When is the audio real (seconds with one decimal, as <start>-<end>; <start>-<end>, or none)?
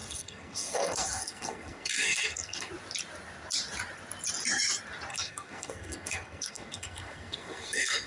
2.7-5.1